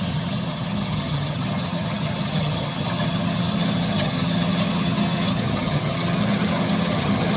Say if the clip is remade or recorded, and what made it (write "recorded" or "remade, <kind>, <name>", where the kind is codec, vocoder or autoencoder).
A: remade, vocoder, HiFi-GAN